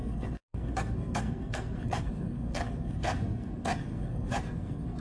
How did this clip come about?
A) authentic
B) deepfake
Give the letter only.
B